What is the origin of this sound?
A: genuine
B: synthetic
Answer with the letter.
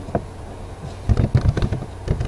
A